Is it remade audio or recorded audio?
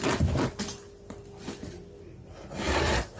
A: recorded